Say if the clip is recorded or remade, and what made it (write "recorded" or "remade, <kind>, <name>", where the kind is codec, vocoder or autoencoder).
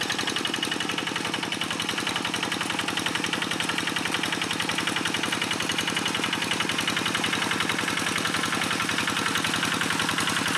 recorded